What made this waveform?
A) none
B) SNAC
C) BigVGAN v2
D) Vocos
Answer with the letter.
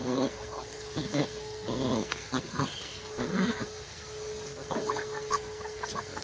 B